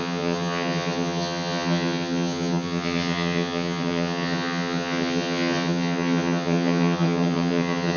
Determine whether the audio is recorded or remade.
remade